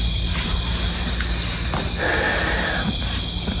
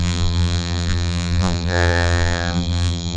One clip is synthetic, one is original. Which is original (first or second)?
first